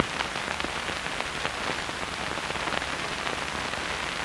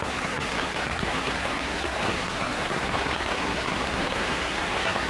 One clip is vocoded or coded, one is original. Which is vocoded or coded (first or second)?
second